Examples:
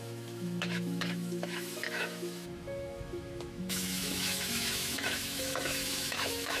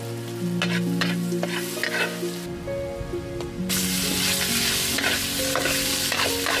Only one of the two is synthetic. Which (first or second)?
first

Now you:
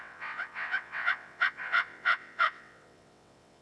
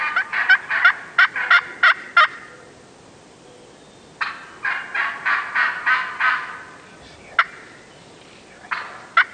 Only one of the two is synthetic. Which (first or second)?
first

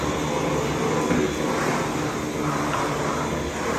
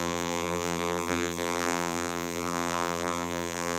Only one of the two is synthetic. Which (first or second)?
second